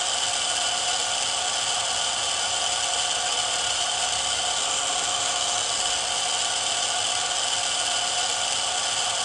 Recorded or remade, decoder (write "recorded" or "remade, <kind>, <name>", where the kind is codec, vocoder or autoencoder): recorded